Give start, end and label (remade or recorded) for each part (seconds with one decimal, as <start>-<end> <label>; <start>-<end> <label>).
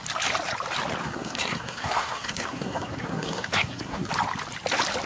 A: 0.0-1.0 recorded; 1.0-4.1 remade; 4.1-5.1 recorded